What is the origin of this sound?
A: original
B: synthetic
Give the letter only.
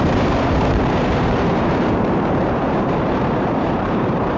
B